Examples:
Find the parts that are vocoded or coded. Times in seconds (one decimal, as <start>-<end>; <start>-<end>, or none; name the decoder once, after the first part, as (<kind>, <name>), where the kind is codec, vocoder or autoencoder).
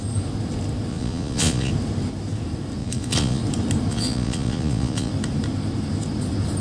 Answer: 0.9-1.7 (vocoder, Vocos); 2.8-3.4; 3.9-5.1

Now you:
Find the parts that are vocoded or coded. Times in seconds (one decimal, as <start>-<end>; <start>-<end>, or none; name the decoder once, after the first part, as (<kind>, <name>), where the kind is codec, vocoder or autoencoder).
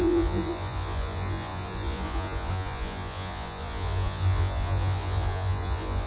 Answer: 0.0-6.1 (vocoder, Vocos)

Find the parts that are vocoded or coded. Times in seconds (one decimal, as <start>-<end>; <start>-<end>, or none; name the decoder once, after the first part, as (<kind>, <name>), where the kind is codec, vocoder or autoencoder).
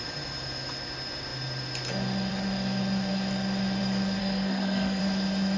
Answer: 4.2-5.0 (codec, SNAC)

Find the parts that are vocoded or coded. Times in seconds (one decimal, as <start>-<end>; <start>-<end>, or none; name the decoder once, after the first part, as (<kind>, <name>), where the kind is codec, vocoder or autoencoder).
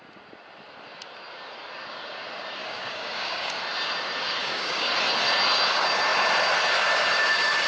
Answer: 2.6-3.6 (codec, DAC); 4.4-4.9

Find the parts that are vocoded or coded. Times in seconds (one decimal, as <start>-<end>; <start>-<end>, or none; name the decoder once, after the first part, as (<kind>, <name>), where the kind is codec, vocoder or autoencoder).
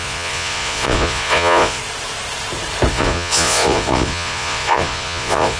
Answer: 0.0-1.8 (vocoder, Vocos); 2.9-5.6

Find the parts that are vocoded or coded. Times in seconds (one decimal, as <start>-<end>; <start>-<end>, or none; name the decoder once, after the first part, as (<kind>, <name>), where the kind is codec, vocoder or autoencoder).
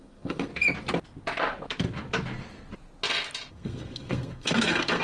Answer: 0.0-0.5 (codec, SNAC); 3.5-5.0